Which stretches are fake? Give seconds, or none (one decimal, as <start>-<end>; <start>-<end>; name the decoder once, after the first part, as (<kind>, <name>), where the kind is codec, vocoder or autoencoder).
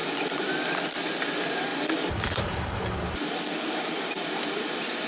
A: 0.0-0.5 (vocoder, BigVGAN v2); 1.7-4.4